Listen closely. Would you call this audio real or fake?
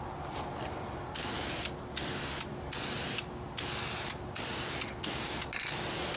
real